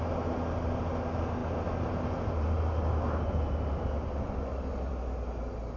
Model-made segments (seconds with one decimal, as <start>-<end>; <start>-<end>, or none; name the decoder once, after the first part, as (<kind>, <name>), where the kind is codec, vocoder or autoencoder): none